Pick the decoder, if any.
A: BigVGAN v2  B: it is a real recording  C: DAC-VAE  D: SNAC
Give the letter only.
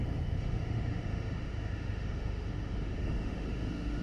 C